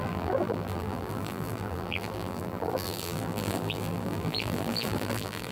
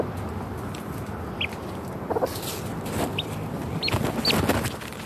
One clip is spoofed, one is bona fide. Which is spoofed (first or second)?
first